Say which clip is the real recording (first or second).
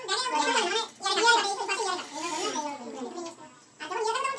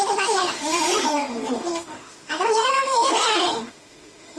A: first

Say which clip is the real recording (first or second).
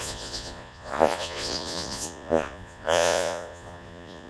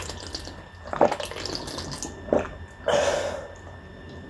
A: second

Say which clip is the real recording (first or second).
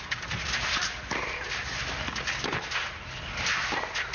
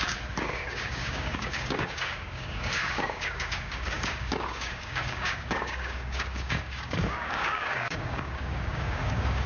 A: first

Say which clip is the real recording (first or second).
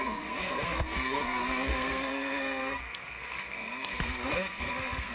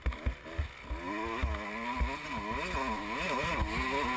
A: second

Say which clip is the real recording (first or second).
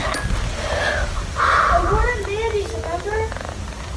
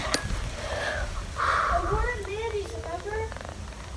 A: first